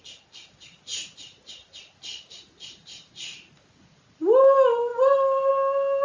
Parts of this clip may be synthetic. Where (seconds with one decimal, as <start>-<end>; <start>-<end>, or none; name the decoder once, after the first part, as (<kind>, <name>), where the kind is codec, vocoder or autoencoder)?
4.9-5.5 (vocoder, BigVGAN v2)